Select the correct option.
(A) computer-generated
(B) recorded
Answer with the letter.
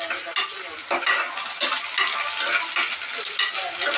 B